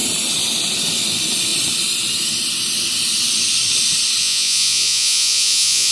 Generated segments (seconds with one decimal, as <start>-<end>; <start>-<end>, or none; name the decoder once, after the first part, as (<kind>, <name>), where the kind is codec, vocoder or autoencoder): 4.2-5.9 (vocoder, Vocos)